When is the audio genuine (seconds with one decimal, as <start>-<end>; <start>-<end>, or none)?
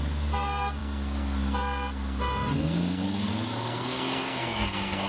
none